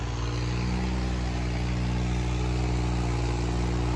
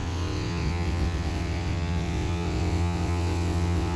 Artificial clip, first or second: second